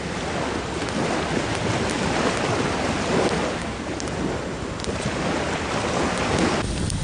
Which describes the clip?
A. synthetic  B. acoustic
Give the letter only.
B